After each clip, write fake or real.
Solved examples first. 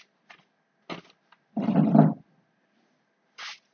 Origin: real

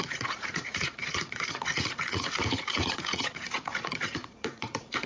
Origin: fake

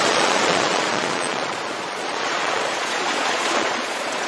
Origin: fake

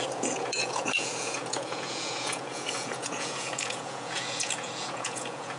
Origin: fake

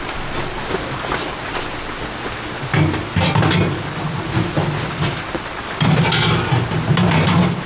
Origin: real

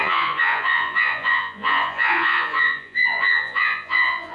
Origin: fake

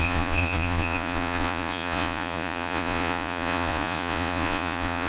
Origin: fake